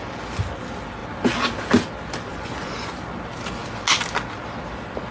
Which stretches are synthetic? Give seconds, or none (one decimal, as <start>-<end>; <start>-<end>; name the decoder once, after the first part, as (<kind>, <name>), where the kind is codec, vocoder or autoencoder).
2.3-2.9 (vocoder, Vocos)